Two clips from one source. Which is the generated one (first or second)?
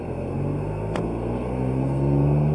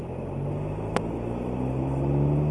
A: first